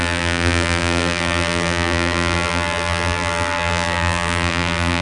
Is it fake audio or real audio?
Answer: fake